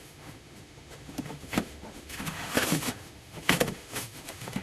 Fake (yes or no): yes